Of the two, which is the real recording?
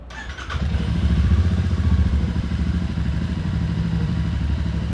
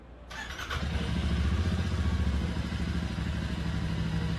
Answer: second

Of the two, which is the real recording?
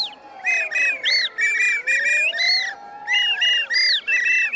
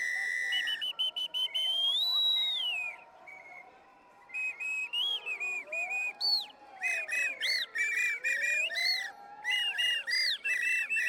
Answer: first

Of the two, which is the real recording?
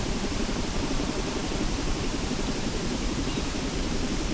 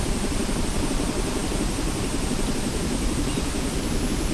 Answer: second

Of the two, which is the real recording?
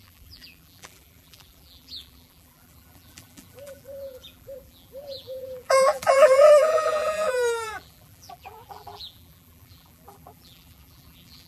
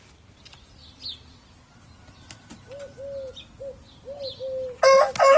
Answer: second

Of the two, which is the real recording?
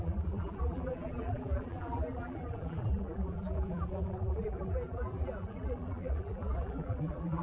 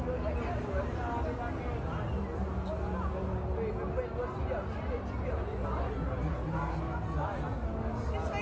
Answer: second